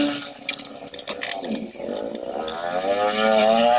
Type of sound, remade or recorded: recorded